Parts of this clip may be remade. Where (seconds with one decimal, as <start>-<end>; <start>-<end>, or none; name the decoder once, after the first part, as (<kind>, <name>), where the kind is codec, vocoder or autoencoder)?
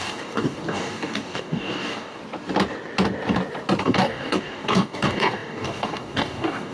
0.0-2.2 (codec, DAC); 3.8-6.7